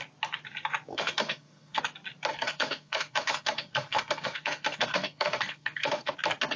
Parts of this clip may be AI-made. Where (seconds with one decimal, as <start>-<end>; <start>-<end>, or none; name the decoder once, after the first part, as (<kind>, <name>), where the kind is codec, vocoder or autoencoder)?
0.9-1.8 (codec, SNAC); 2.3-6.1